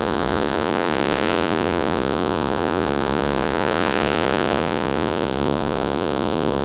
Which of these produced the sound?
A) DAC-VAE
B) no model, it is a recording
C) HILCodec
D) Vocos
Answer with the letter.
D